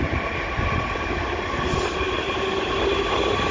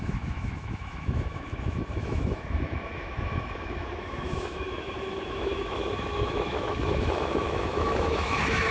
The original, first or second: first